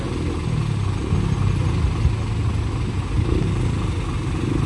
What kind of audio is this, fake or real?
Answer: real